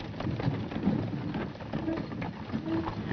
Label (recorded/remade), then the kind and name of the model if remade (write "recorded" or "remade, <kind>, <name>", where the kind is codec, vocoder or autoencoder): recorded